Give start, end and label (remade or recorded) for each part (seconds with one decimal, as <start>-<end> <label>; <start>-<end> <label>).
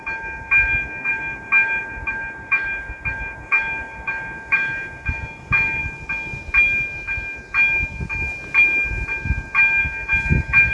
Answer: 0.0-5.8 remade; 5.8-9.8 recorded; 9.8-10.7 remade